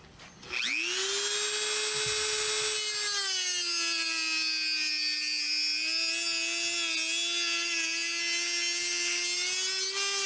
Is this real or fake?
real